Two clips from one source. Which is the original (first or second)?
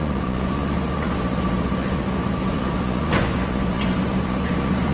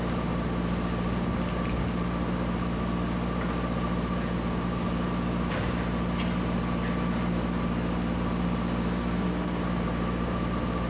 second